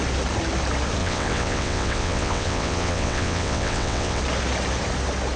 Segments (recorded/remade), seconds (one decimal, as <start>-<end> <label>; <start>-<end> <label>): 0.0-1.0 recorded; 1.0-4.2 remade; 4.2-5.4 recorded